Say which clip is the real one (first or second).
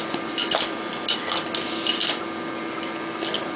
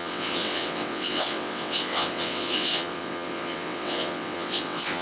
first